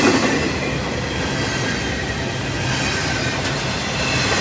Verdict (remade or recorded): recorded